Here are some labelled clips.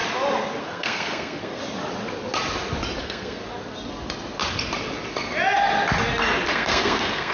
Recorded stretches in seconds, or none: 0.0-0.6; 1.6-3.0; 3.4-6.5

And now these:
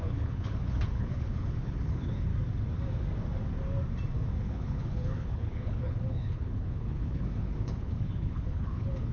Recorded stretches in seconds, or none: 2.3-4.4

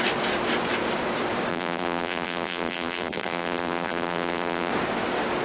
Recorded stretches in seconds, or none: 0.0-1.5; 4.7-5.4

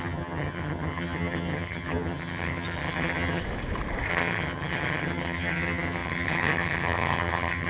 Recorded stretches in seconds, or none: 3.4-4.1

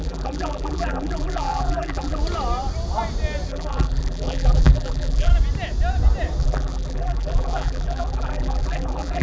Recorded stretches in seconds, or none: 2.2-3.5; 5.3-6.4

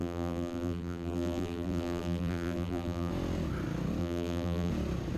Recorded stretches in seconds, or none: 3.1-4.0; 4.7-5.2

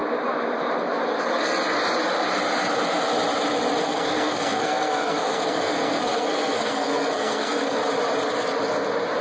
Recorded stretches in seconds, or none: 0.0-3.8; 7.8-9.2

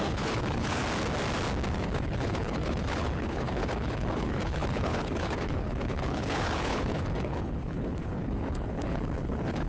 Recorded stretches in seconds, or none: 0.8-1.7